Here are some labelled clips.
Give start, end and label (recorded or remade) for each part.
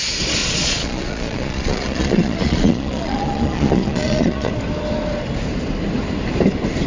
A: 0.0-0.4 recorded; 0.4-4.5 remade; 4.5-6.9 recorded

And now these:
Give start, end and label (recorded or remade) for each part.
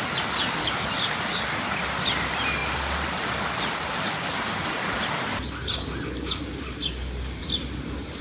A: 0.0-8.2 recorded